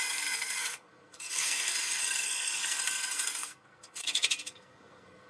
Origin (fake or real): fake